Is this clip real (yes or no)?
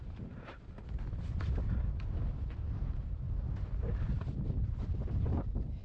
yes